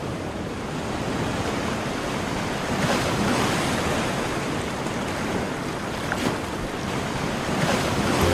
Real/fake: real